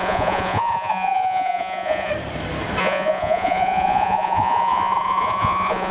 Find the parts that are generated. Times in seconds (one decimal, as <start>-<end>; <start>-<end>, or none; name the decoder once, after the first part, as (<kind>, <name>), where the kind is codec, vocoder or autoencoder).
0.0-2.1 (vocoder, Vocos); 2.8-5.9